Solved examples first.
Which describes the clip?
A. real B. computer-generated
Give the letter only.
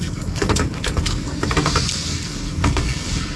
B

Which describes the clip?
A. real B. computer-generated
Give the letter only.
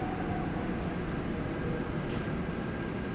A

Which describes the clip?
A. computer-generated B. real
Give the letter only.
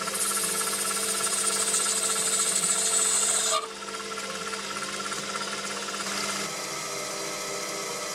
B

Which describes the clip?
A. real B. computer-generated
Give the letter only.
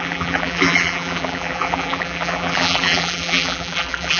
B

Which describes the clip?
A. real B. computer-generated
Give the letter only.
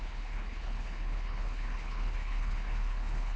B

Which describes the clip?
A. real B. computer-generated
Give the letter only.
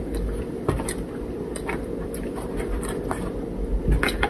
A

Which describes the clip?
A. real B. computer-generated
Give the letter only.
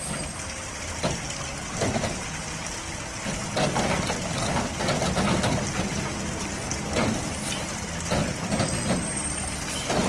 A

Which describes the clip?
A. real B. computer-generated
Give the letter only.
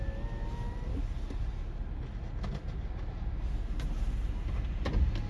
A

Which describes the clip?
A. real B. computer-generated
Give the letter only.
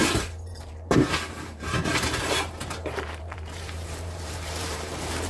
B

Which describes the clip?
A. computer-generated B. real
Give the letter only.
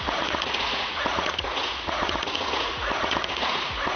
A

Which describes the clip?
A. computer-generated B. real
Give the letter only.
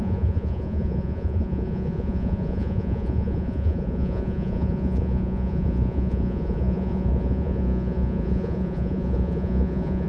A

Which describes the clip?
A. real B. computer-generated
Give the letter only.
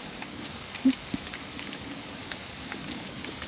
B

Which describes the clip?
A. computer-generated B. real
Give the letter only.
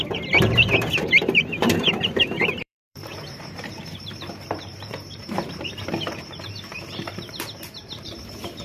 A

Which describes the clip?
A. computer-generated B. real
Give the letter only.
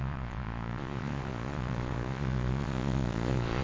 A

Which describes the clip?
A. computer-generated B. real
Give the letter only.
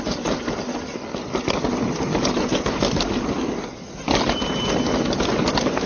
B